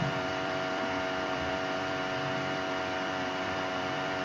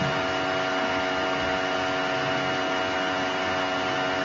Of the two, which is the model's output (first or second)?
first